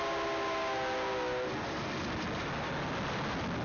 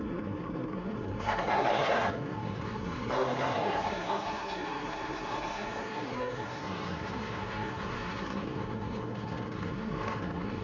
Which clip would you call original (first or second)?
first